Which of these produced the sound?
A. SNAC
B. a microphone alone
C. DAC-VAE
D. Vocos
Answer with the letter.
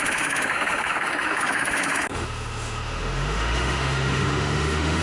C